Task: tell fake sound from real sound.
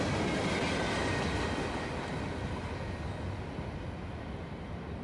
real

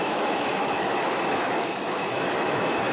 fake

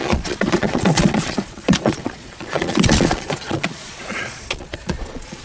fake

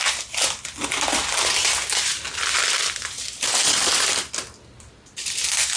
real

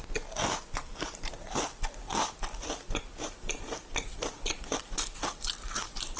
real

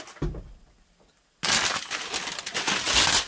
real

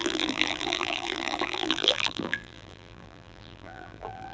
fake